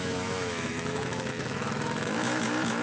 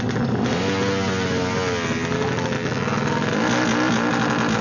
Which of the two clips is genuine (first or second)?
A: second